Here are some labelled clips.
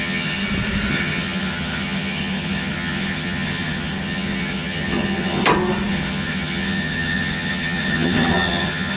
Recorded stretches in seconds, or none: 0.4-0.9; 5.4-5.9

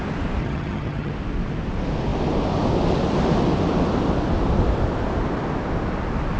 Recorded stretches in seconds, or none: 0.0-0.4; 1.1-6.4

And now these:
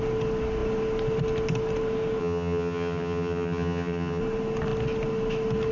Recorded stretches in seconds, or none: 0.0-2.2; 4.2-5.7

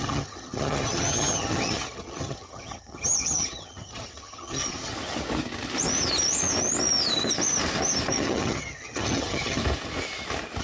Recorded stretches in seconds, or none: 4.9-8.1; 9.6-10.6

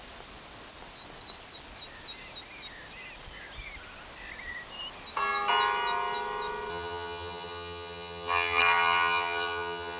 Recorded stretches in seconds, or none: 0.0-6.7